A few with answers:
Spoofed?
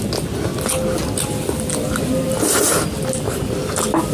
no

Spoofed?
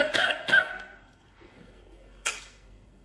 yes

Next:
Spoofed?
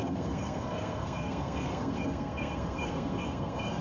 yes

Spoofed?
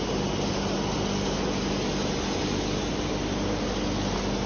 no